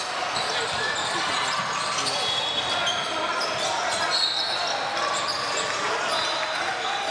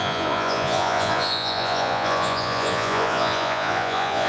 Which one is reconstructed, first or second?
second